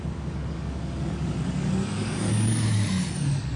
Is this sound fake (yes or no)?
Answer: yes